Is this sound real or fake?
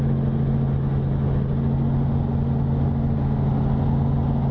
real